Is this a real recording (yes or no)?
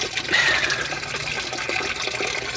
yes